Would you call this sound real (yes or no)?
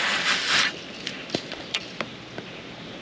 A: yes